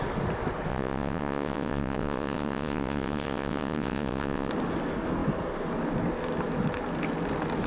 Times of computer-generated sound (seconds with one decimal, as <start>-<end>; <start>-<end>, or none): 0.7-4.5